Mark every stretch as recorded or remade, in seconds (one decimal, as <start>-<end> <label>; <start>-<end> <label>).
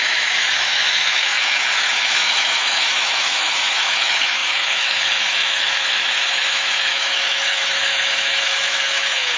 0.0-9.4 remade